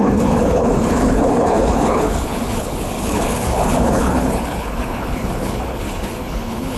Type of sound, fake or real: fake